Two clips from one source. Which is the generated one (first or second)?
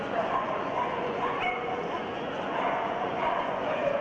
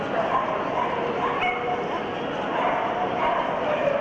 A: first